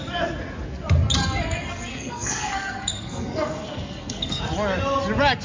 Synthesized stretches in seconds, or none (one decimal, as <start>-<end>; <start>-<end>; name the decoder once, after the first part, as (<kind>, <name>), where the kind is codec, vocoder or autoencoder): 1.2-4.4 (codec, SNAC)